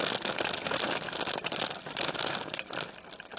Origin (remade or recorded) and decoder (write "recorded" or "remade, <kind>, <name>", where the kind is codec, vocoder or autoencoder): recorded